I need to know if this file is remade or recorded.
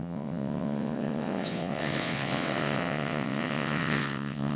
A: remade